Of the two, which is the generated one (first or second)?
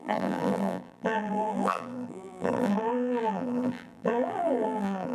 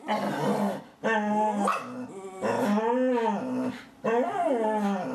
first